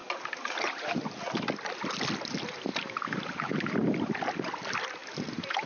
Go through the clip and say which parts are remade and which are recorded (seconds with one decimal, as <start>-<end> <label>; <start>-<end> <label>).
0.0-2.7 recorded; 2.7-3.9 remade; 3.9-5.0 recorded; 5.0-5.7 remade